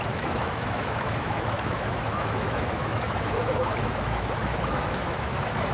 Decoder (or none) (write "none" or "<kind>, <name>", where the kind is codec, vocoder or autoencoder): autoencoder, DAC-VAE